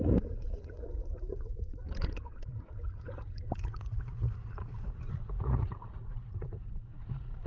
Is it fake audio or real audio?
fake